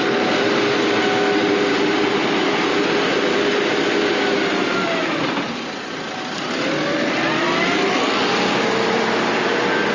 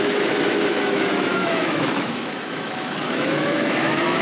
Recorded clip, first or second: first